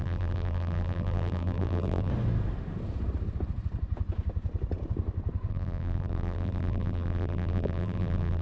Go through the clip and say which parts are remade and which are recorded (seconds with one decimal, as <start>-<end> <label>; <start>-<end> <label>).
0.0-2.1 remade; 2.1-5.5 recorded; 5.5-8.4 remade